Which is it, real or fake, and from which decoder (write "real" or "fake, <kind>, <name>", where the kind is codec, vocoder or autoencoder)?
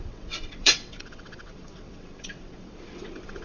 fake, vocoder, WaveNeXt